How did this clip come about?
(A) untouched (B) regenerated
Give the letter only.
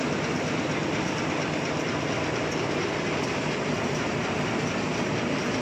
B